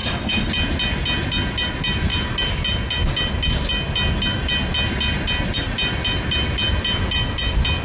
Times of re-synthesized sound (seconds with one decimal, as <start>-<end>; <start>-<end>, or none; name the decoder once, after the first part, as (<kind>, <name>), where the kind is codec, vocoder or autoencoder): 0.0-0.5 (codec, DAC)